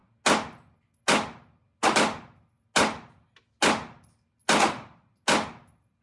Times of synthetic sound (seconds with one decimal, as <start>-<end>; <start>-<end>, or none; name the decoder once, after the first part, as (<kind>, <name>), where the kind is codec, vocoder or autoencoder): none